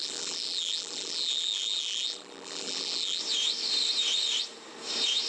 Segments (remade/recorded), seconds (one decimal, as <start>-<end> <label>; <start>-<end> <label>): 0.0-3.2 remade; 3.2-5.3 recorded